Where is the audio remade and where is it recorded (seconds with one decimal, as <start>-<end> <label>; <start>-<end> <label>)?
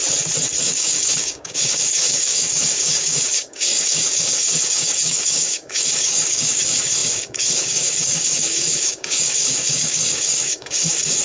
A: 0.0-0.6 recorded; 0.6-11.2 remade